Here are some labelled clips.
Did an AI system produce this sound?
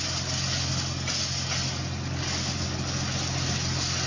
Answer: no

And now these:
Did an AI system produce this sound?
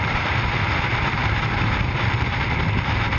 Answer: yes